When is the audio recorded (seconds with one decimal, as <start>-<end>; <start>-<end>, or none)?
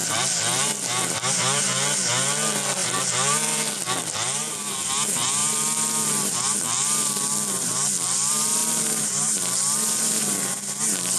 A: 1.6-2.8; 4.5-11.2